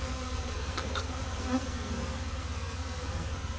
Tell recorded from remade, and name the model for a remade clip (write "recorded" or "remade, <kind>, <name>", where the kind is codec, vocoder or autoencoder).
remade, codec, SNAC